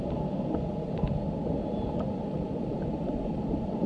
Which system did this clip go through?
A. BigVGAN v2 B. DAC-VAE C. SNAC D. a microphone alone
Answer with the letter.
D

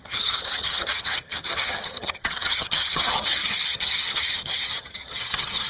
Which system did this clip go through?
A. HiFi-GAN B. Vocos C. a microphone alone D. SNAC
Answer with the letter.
A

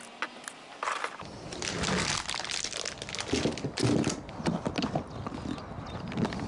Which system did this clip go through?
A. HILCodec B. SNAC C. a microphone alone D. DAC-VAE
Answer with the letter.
C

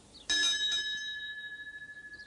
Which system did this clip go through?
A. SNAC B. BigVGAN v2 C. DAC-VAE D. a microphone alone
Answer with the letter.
D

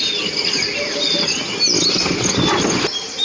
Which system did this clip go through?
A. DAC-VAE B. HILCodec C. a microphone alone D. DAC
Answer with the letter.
C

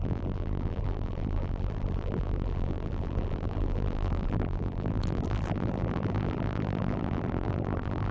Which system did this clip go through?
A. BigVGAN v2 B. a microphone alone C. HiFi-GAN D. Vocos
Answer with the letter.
A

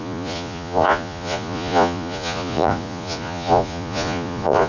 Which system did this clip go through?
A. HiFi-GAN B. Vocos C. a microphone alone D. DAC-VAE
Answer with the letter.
B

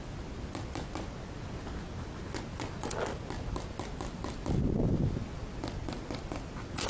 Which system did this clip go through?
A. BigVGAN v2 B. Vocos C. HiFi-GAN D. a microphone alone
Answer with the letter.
D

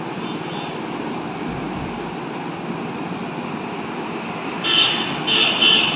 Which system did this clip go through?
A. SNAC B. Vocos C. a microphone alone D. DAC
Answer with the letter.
C